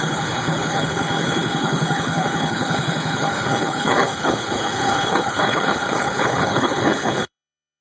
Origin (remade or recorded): remade